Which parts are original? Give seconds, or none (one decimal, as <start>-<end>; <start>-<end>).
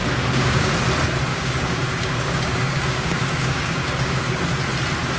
0.7-1.3; 4.4-5.2